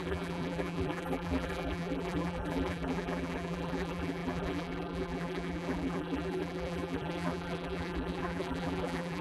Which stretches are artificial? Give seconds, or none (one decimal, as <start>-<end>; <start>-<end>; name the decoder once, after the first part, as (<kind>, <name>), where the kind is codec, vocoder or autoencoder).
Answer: 0.0-9.2 (vocoder, BigVGAN v2)